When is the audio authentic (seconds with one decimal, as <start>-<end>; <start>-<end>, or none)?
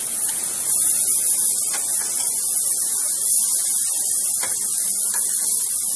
0.0-6.0